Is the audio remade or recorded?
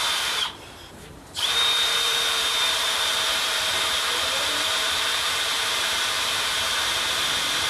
remade